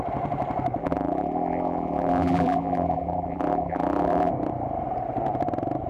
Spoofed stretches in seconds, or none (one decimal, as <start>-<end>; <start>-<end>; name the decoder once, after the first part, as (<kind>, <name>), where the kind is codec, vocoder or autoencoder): 0.8-4.3 (vocoder, BigVGAN v2)